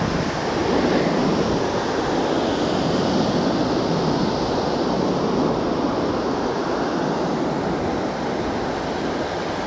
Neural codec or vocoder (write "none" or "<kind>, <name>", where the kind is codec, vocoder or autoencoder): none